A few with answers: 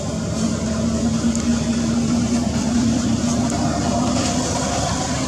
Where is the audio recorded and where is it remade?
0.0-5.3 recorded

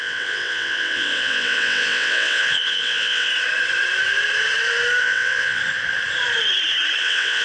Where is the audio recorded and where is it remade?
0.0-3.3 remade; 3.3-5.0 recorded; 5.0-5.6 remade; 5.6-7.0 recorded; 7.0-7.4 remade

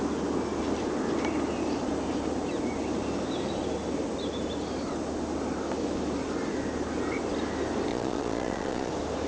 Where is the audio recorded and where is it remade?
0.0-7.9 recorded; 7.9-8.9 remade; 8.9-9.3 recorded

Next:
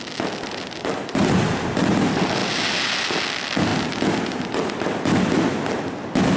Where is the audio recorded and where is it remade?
0.0-6.4 recorded